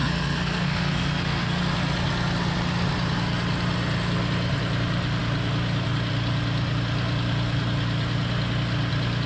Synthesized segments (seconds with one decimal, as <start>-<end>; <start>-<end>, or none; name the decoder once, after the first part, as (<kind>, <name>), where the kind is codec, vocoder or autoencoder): 0.0-1.6 (codec, SNAC)